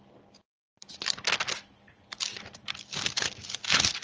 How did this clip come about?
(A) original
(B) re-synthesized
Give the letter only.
A